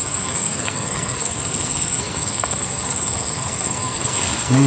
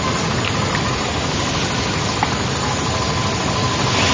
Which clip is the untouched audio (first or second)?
second